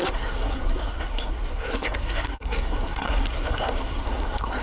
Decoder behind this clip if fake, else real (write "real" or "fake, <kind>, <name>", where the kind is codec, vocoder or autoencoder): fake, codec, SNAC